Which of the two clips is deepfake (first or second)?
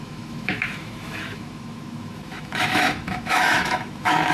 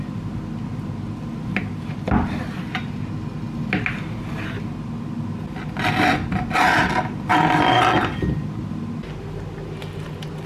first